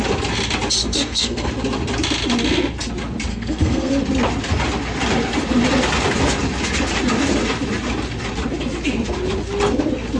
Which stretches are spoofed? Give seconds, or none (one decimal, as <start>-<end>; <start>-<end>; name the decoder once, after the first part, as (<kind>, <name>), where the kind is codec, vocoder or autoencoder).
0.8-1.5 (codec, SNAC); 3.3-3.9